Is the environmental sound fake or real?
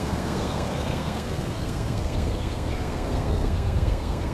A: fake